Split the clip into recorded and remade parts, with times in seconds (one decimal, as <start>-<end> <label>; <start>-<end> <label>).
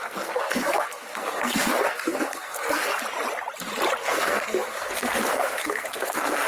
0.0-3.0 remade; 3.0-4.0 recorded; 4.0-6.5 remade